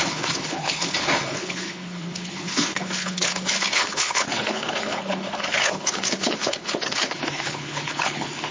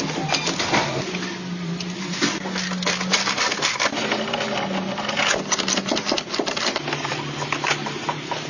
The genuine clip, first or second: second